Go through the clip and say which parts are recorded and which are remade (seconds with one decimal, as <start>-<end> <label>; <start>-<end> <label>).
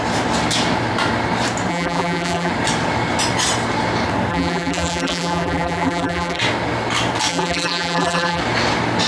0.0-1.7 recorded; 1.7-2.5 remade; 2.5-4.3 recorded; 4.3-6.4 remade; 6.4-7.3 recorded; 7.3-8.4 remade; 8.4-9.1 recorded